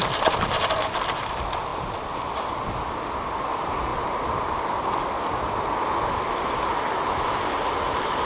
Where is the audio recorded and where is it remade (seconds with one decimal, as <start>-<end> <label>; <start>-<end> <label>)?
0.0-8.2 recorded